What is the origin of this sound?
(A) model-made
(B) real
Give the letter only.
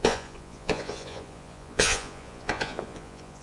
A